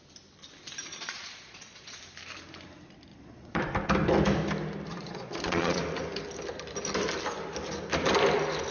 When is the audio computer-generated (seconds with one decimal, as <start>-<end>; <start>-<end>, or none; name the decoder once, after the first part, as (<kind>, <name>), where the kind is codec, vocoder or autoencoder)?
0.9-2.0 (vocoder, Vocos); 3.1-3.6; 4.9-5.8